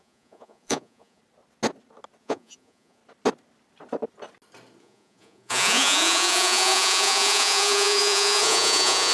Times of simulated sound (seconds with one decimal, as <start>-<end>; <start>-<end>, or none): 0.0-1.2; 2.2-3.0; 4.8-9.1